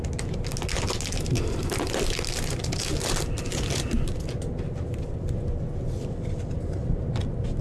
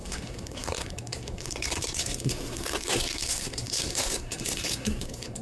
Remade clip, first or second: second